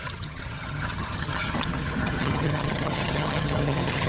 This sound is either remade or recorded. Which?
remade